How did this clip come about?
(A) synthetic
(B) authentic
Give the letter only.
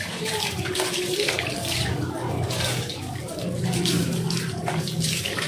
A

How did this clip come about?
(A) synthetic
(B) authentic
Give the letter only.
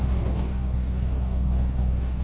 A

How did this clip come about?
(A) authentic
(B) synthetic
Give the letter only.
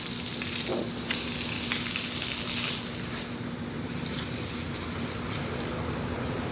A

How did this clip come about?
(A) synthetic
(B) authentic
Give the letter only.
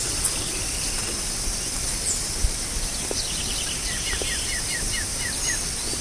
B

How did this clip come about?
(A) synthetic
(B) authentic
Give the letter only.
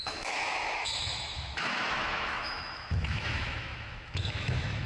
A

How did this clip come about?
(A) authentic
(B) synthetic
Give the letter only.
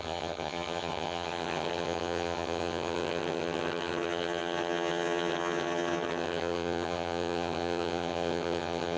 B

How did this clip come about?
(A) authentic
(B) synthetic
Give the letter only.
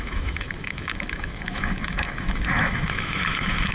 B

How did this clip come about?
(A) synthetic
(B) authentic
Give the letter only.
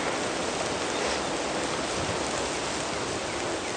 B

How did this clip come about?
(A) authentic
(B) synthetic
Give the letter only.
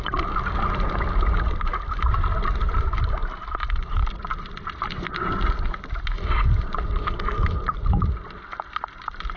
A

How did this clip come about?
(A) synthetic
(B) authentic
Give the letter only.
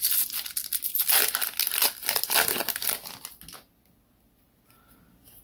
B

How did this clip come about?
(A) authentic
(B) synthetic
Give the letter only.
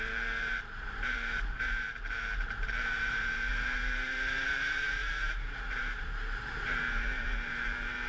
B